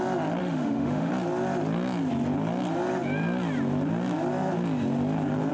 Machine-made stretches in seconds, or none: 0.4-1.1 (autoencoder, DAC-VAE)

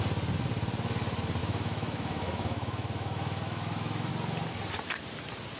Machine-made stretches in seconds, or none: 1.4-4.1 (autoencoder, DAC-VAE)